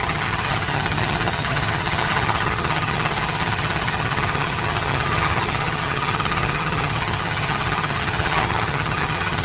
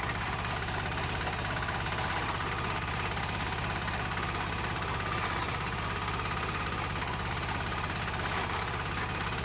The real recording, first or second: second